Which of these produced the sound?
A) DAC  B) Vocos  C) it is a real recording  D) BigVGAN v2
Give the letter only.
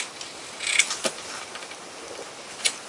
C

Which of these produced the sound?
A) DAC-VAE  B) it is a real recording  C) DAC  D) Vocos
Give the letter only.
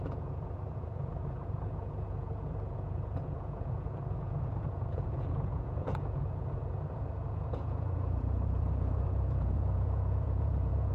D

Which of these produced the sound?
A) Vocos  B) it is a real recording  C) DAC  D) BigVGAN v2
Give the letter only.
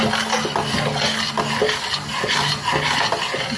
B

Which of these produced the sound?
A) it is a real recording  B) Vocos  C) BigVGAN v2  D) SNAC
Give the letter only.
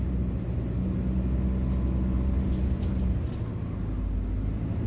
A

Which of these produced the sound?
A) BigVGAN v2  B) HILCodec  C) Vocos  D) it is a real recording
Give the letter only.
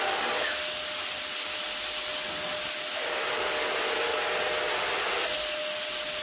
D